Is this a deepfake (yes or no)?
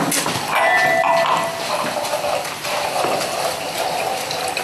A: no